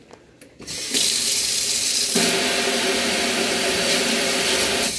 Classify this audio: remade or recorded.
recorded